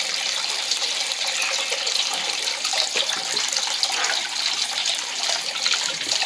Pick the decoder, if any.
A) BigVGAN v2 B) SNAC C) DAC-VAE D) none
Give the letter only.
D